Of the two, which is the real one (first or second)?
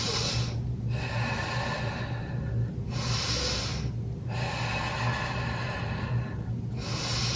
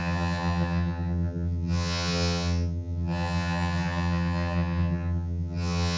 first